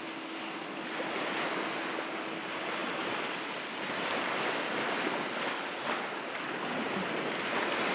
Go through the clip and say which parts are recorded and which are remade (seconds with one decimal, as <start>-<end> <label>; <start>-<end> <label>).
0.0-2.8 recorded; 2.8-7.5 remade; 7.5-7.9 recorded